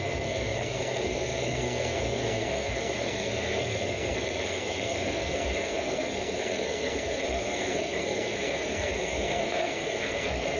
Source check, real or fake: fake